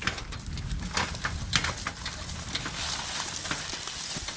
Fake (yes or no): no